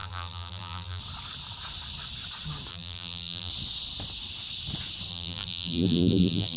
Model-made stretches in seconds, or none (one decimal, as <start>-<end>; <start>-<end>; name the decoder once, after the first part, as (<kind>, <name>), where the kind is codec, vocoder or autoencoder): 0.0-1.0 (vocoder, BigVGAN v2); 2.7-3.5; 5.1-6.6